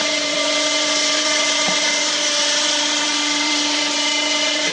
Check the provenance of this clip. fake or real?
fake